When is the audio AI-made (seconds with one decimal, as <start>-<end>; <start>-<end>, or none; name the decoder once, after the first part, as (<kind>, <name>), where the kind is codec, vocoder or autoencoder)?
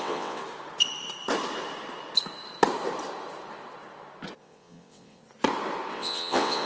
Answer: 0.0-0.4 (vocoder, WaveNeXt); 4.4-5.2; 5.9-6.7